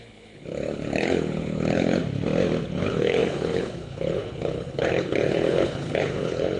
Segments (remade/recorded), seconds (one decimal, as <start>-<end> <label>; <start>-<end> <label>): 0.0-2.0 remade; 2.0-2.7 recorded; 2.7-6.6 remade